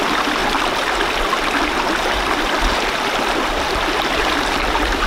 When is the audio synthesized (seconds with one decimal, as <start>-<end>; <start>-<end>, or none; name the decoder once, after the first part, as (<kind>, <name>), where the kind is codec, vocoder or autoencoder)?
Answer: 0.0-0.4 (vocoder, BigVGAN v2); 3.5-5.1